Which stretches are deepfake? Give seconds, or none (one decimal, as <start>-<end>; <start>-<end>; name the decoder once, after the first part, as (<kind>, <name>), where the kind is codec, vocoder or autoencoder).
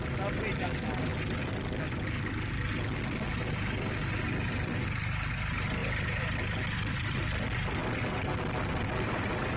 none